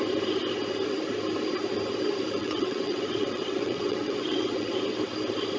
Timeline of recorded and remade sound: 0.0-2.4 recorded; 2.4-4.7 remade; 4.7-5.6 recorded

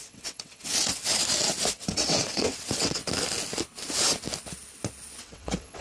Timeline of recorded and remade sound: 0.0-1.1 remade; 1.1-1.7 recorded; 1.7-3.0 remade; 3.0-5.2 recorded; 5.2-5.8 remade

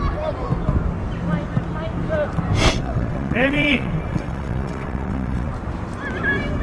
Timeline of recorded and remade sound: 0.0-2.6 recorded; 2.6-5.5 remade; 5.5-6.6 recorded

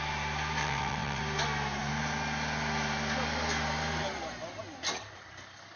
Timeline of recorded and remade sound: 0.0-0.6 recorded; 0.6-1.2 remade; 1.2-5.8 recorded